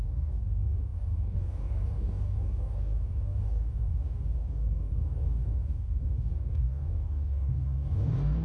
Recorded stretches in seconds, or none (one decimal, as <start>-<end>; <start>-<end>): none